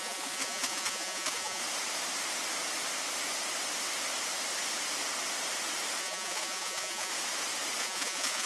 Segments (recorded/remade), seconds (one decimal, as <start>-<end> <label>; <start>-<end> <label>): 0.0-1.6 remade; 1.6-6.0 recorded; 6.0-7.1 remade; 7.1-7.8 recorded; 7.8-8.5 remade